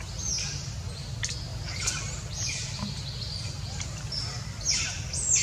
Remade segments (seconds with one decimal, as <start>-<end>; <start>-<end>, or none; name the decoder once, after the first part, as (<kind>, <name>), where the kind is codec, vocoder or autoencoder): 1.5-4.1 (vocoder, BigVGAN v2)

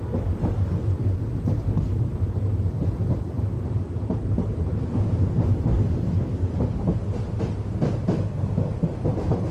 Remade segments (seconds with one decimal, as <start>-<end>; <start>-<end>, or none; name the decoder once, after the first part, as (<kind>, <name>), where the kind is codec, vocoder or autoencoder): 0.0-9.5 (vocoder, BigVGAN v2)

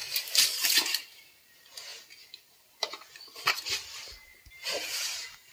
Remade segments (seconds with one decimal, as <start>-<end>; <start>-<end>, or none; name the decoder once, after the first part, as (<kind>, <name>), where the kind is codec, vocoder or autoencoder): 0.0-1.3 (vocoder, BigVGAN v2)

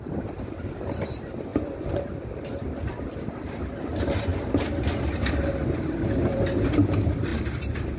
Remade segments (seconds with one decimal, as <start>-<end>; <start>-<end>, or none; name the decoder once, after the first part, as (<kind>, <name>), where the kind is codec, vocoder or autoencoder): 0.0-4.3 (vocoder, BigVGAN v2); 5.2-7.3